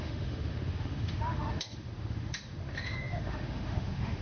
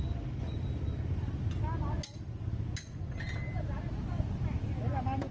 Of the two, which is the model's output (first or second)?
first